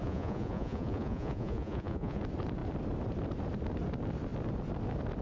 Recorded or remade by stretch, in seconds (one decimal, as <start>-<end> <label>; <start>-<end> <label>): 0.0-2.2 remade; 2.2-5.2 recorded